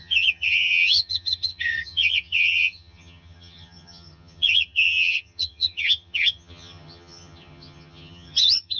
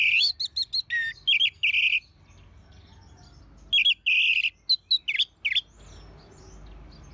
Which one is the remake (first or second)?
first